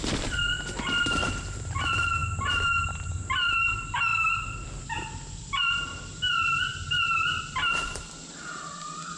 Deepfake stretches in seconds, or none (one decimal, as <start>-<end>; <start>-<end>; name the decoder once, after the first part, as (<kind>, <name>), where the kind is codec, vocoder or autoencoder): 0.0-2.2 (vocoder, BigVGAN v2); 3.1-9.2